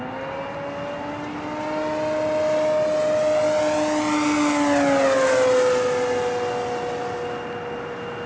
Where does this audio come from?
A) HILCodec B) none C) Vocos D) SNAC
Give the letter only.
B